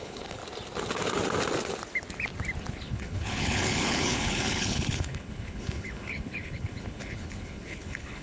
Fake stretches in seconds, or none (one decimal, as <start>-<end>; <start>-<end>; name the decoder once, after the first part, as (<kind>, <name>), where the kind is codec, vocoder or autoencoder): 0.0-0.4 (codec, HILCodec); 2.7-8.2

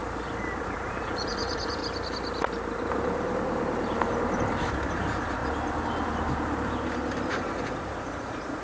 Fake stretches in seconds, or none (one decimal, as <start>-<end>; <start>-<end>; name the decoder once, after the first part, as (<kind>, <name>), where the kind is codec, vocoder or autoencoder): 0.6-1.8 (vocoder, Vocos); 4.9-5.4; 7.3-8.6